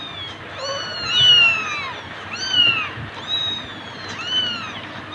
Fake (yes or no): no